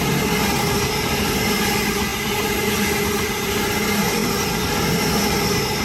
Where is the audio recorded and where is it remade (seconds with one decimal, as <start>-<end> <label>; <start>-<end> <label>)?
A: 0.0-5.8 recorded